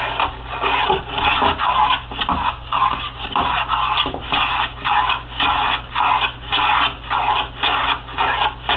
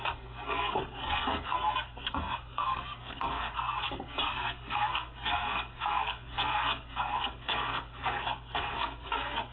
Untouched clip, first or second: first